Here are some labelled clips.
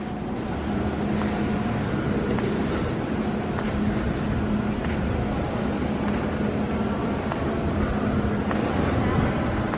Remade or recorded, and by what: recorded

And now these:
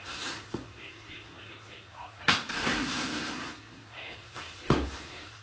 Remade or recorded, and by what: remade, codec, SNAC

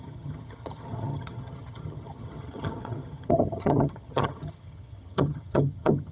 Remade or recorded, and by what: remade, vocoder, HiFi-GAN